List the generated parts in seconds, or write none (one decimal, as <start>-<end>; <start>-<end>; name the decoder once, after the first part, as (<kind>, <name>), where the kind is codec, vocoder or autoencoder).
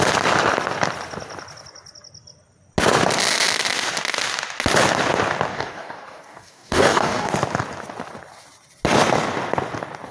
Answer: 5.5-7.3 (codec, DAC)